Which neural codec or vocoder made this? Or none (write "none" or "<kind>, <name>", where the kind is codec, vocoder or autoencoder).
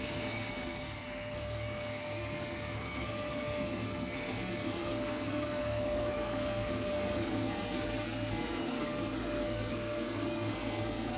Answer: codec, SNAC